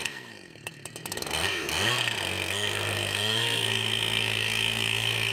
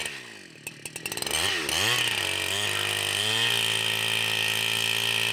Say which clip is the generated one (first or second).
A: first